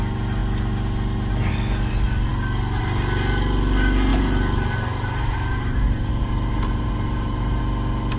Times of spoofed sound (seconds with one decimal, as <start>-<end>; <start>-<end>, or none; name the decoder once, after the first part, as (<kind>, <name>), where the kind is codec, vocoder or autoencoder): 4.1-7.6 (vocoder, BigVGAN v2)